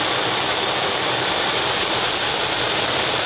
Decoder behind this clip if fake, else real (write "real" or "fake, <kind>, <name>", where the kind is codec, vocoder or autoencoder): real